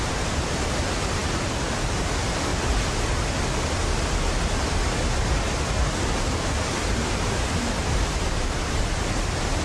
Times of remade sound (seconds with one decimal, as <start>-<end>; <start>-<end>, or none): 0.0-2.5; 4.4-5.0; 6.7-9.6